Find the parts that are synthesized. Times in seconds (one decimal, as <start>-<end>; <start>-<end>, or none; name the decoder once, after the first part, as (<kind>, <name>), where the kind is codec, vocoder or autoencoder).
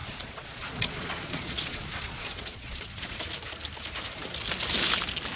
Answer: 0.0-3.2 (vocoder, Vocos)